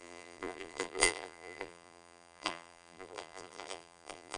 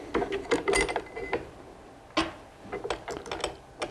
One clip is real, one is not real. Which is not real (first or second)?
first